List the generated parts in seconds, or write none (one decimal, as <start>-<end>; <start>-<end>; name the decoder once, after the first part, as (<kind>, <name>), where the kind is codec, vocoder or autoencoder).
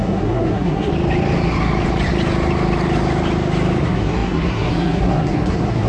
0.0-0.9 (codec, SNAC); 3.8-5.9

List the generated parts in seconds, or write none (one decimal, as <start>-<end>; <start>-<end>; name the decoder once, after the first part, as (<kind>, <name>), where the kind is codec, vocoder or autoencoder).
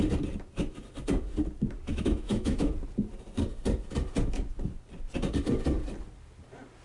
1.9-2.7 (autoencoder, DAC-VAE)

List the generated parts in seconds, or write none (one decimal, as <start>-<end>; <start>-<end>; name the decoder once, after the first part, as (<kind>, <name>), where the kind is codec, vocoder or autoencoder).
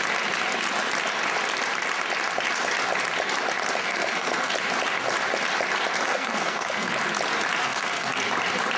3.8-4.5 (codec, SNAC); 6.1-7.0; 7.6-8.2